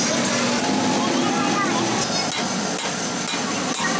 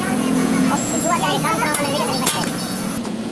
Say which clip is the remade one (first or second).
second